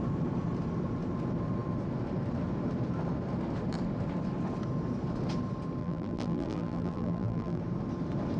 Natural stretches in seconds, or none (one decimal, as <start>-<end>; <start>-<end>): 0.0-5.8; 7.6-8.4